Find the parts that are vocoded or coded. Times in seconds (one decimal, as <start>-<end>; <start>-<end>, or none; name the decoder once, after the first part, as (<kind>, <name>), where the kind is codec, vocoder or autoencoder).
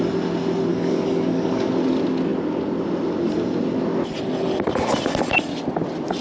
0.7-1.7 (codec, DAC)